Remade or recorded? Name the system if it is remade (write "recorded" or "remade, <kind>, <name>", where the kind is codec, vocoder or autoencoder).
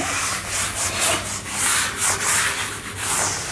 recorded